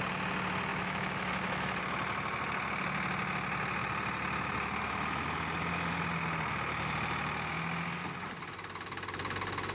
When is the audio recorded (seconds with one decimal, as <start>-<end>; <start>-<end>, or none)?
0.0-0.7; 1.8-9.7